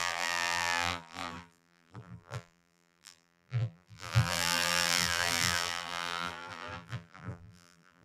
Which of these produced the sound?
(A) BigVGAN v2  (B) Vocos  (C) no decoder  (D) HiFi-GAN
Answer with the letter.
A